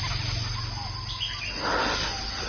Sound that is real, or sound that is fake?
real